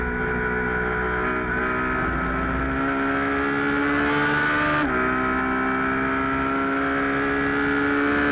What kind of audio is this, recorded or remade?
recorded